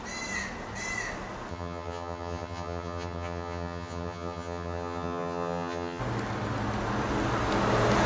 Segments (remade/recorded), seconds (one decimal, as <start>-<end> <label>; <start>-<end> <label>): 0.0-1.5 recorded; 1.5-6.0 remade; 6.0-8.1 recorded